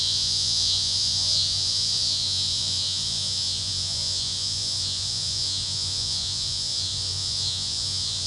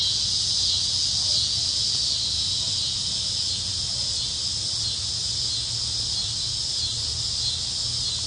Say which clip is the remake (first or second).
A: first